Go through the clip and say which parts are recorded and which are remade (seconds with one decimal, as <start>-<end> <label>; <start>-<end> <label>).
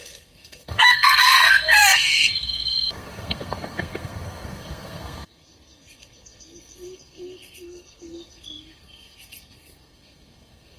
0.0-10.8 remade